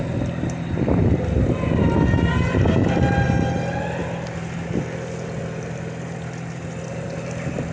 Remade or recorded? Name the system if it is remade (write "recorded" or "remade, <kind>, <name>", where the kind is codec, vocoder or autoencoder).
recorded